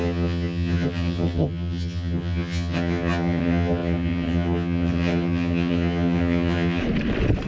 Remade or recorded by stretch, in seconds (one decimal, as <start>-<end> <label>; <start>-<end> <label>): 0.0-6.8 remade; 6.8-7.5 recorded